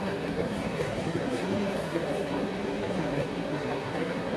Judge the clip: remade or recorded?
remade